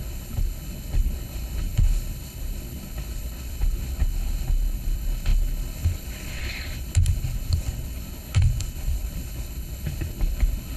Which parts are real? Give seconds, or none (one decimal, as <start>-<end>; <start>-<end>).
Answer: none

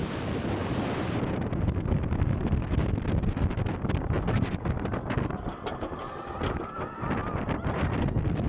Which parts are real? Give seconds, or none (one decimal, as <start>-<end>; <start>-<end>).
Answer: 7.2-8.0

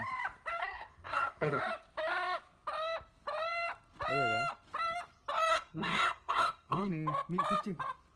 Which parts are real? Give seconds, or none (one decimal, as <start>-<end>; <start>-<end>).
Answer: 0.0-0.6; 1.6-5.5; 6.9-8.2

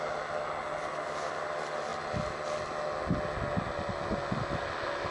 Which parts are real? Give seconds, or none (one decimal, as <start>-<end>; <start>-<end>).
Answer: 0.0-5.1

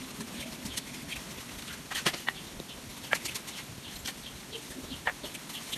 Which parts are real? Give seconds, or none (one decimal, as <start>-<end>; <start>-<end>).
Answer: 0.0-5.8

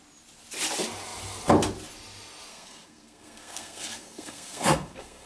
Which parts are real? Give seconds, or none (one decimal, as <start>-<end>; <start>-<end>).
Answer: 0.0-2.5

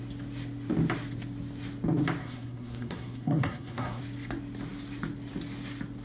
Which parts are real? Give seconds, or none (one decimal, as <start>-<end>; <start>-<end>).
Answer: 0.0-2.2; 4.0-6.0

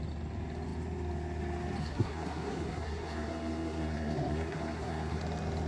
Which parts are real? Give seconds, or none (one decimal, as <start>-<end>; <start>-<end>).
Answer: 0.0-1.8; 5.2-5.7